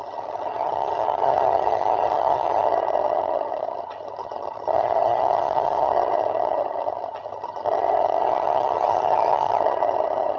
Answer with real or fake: fake